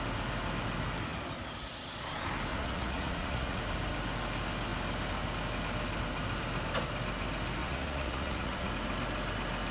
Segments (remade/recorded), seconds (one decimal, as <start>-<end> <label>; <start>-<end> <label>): 0.0-2.5 recorded; 2.5-3.6 remade; 3.6-7.6 recorded; 7.6-8.7 remade; 8.7-9.7 recorded